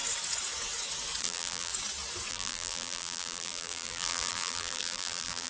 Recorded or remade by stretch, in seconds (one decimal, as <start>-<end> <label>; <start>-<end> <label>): 0.0-1.2 recorded; 1.2-1.7 remade; 1.7-2.3 recorded; 2.3-5.5 remade